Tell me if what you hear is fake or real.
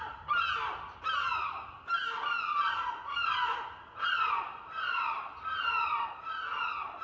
real